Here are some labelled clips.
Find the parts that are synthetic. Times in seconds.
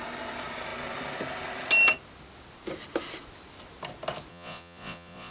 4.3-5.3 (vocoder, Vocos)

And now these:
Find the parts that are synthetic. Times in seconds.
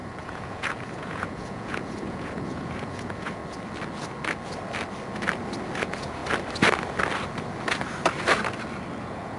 0.0-3.4 (vocoder, Vocos); 5.8-6.2; 9.0-9.4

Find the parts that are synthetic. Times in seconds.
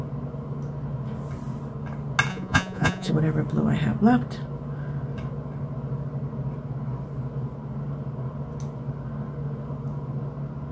2.3-3.1 (vocoder, Vocos)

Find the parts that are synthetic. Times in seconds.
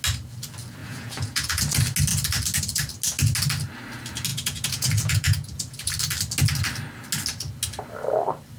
0.8-1.6 (vocoder, Vocos); 4.3-5.9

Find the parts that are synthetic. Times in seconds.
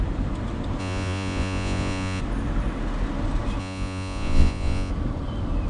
0.8-2.2 (vocoder, Vocos); 3.6-4.9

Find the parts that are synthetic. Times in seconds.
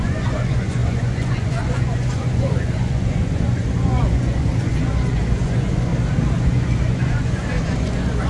0.0-5.9 (vocoder, Vocos); 6.4-8.3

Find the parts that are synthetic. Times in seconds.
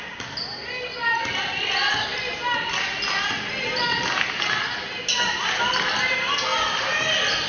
none